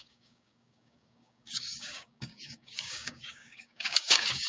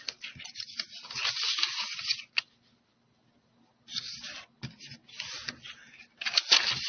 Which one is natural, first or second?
second